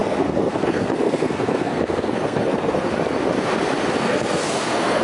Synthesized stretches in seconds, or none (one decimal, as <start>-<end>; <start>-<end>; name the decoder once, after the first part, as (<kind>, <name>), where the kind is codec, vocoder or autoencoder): 0.0-2.9 (codec, SNAC); 4.0-5.0